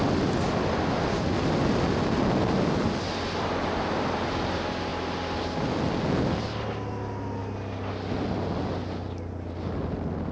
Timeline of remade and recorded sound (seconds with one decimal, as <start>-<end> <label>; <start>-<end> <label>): 0.0-10.3 recorded

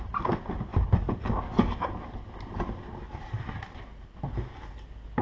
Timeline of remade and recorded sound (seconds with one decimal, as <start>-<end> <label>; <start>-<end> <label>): 0.0-5.2 recorded

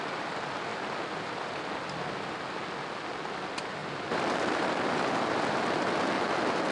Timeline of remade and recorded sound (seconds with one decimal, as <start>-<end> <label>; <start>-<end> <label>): 0.0-3.8 recorded; 3.8-6.0 remade; 6.0-6.7 recorded

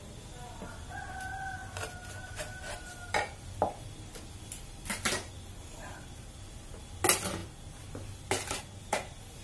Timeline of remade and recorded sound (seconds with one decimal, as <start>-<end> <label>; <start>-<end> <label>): 0.0-9.4 recorded